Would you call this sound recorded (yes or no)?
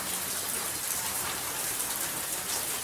yes